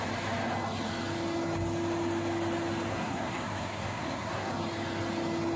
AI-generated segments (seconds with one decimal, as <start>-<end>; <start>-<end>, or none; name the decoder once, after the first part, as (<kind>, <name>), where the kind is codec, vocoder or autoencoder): 2.9-4.5 (codec, SNAC)